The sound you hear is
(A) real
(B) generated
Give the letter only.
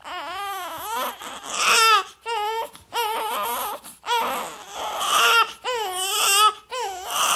A